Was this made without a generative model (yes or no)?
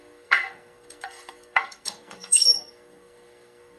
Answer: no